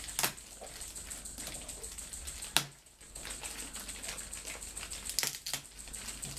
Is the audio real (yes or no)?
yes